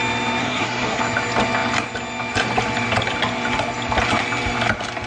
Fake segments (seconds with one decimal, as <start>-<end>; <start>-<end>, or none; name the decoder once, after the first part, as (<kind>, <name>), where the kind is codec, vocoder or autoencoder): 0.4-1.0 (codec, SNAC)

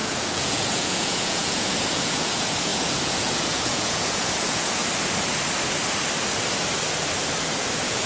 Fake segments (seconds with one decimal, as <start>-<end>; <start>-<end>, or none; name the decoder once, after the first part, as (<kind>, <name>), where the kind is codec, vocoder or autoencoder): 0.0-4.8 (vocoder, Vocos); 7.4-8.1

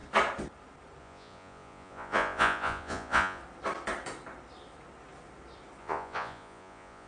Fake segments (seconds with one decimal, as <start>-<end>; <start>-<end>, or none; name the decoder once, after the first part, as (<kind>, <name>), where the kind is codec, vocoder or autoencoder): 1.0-3.4 (vocoder, Vocos); 5.8-7.1

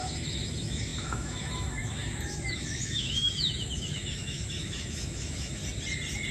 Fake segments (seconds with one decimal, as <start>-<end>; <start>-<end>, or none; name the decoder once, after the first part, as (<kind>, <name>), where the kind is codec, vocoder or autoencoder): 0.0-5.6 (autoencoder, DAC-VAE)